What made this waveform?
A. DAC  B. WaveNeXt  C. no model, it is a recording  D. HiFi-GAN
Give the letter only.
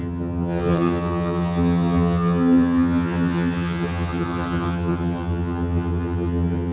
D